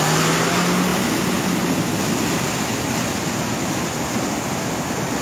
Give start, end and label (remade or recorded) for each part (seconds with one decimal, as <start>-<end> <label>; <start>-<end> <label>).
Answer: 0.0-5.2 recorded